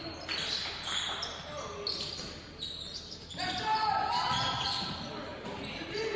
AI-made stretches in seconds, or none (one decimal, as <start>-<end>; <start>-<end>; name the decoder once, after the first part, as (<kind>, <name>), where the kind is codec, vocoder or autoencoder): 3.1-6.2 (vocoder, BigVGAN v2)